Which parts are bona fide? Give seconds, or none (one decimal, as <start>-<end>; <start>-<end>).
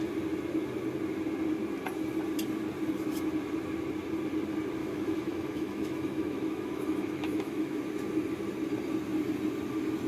0.0-4.8; 7.8-10.1